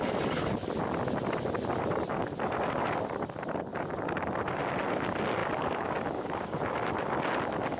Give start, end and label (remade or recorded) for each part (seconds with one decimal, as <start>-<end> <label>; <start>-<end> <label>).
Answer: 0.0-7.8 recorded